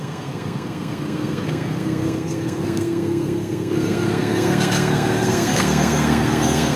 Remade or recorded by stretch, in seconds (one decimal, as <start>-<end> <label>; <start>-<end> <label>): 0.0-6.8 remade